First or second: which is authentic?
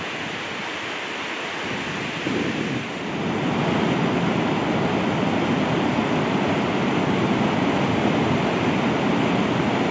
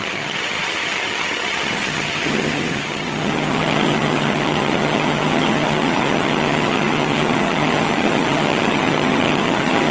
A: first